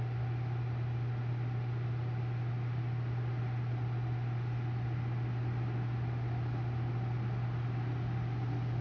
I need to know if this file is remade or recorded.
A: recorded